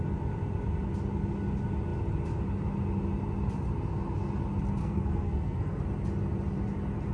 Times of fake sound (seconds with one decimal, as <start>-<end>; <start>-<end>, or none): 4.8-5.8